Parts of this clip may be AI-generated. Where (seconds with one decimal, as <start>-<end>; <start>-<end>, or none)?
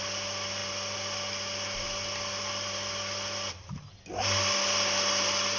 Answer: none